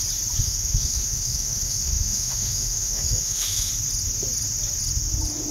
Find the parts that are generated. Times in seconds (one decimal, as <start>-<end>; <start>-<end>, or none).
0.4-3.7